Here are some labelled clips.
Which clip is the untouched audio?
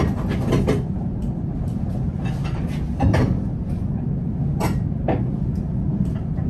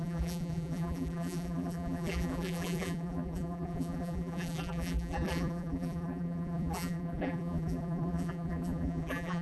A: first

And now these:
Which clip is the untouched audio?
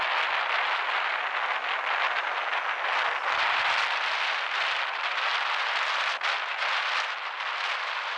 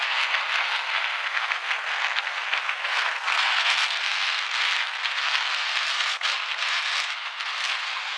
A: first